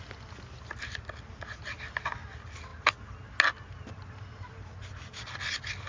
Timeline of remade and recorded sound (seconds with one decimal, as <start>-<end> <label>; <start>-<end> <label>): 0.0-5.9 recorded